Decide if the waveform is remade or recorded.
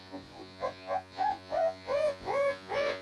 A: remade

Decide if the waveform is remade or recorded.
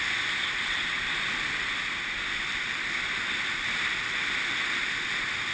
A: recorded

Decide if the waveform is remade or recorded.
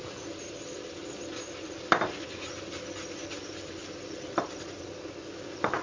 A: recorded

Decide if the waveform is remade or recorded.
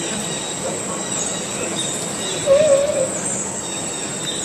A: recorded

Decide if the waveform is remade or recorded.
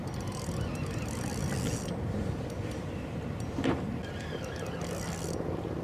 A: recorded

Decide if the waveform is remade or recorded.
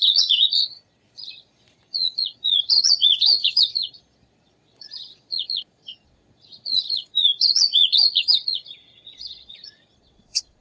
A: remade